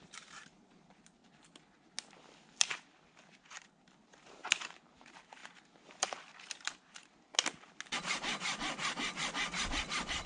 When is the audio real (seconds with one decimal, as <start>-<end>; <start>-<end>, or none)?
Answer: 1.2-3.7; 5.4-10.3